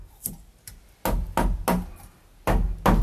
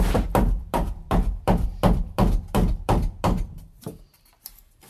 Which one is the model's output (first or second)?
second